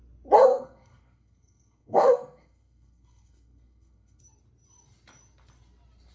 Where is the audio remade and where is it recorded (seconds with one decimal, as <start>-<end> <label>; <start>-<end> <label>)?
0.0-0.5 recorded; 0.5-4.2 remade; 4.2-6.1 recorded